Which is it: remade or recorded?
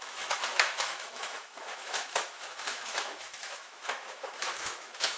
remade